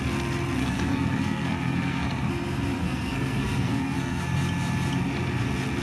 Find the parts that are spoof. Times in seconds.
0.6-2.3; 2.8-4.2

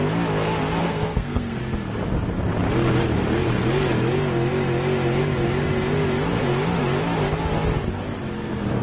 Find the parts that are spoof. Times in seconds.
0.8-1.6

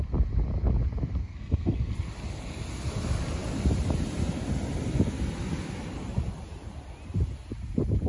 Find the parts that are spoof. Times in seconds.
1.2-1.9